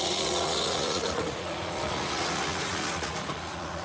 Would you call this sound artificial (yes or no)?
yes